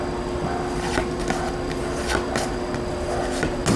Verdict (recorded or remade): recorded